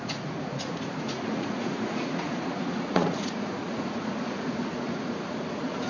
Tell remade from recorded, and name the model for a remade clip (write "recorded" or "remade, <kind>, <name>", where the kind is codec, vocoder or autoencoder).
remade, vocoder, Vocos